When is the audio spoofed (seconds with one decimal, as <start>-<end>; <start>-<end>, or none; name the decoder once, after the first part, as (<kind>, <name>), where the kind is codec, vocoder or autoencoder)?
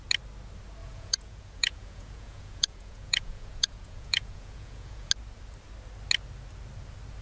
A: 0.8-5.1 (vocoder, Vocos)